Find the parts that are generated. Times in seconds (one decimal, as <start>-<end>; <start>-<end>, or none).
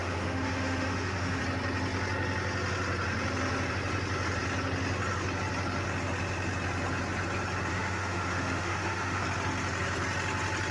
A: 0.0-1.4; 7.7-9.2